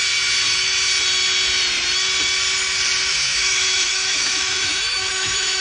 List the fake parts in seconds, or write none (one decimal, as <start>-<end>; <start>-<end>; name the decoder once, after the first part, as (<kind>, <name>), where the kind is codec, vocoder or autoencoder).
3.1-5.6 (autoencoder, DAC-VAE)